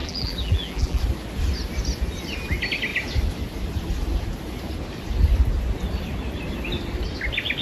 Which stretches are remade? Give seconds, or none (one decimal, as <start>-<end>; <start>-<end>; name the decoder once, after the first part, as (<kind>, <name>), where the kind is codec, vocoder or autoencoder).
0.0-1.0 (vocoder, BigVGAN v2)